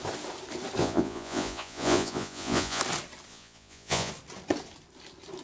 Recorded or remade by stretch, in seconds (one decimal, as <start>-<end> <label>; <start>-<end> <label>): 0.0-0.8 recorded; 0.8-2.8 remade; 2.8-3.3 recorded; 3.3-4.1 remade; 4.1-5.4 recorded